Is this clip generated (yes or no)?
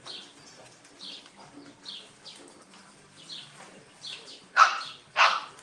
no